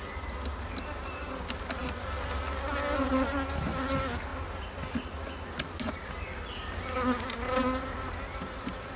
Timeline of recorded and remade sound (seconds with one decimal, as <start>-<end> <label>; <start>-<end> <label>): 0.0-9.0 recorded